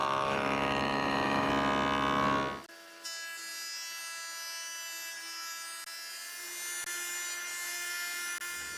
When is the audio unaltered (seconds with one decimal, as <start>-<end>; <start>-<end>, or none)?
1.5-8.8